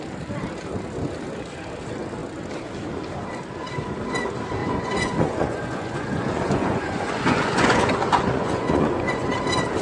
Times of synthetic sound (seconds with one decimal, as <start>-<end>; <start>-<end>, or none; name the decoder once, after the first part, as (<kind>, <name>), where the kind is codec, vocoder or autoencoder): 4.6-9.3 (vocoder, Vocos)